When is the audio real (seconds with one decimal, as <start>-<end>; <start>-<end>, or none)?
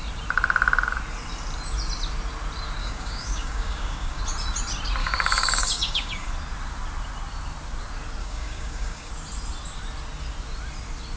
0.0-2.8; 4.2-5.0; 6.3-8.2; 9.1-11.2